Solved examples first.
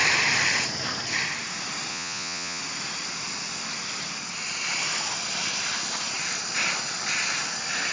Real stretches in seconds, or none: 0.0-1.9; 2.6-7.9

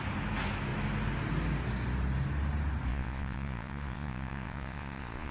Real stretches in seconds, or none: 0.0-2.9

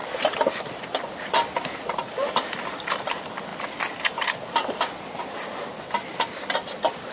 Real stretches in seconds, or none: 0.0-7.1

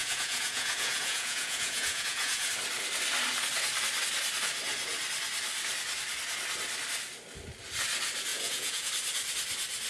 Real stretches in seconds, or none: 2.5-8.3; 8.9-9.9

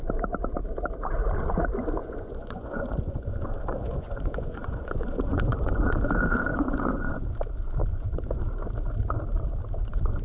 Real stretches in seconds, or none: 0.0-2.0; 6.1-6.5; 7.3-7.8; 8.4-10.2

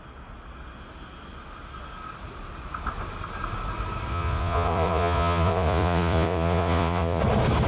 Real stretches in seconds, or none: 0.0-4.1; 7.2-7.7

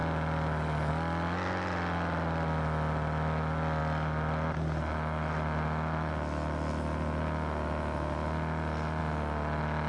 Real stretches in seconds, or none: 0.0-9.9